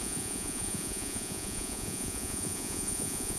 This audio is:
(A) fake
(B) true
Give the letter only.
A